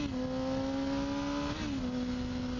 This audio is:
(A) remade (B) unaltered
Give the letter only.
B